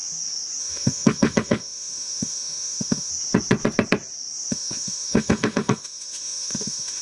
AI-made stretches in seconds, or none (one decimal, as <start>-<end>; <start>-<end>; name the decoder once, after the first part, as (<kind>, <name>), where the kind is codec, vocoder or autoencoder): 0.6-3.1 (autoencoder, DAC-VAE); 4.5-7.0